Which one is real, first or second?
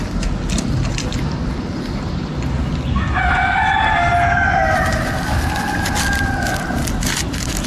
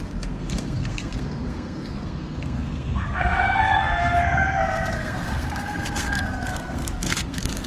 first